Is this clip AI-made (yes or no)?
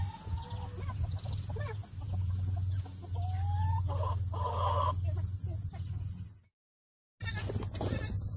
no